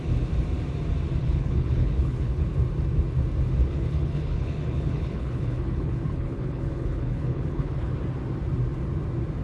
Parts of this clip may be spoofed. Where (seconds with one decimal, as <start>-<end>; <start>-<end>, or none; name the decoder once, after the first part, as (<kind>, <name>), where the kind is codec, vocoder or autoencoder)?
1.2-2.5 (codec, HILCodec); 3.6-7.9